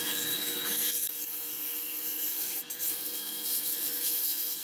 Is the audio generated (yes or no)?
yes